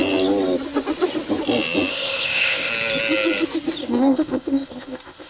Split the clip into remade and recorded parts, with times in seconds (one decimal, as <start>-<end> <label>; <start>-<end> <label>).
0.0-1.9 recorded; 1.9-2.7 remade; 2.7-3.8 recorded; 3.8-5.3 remade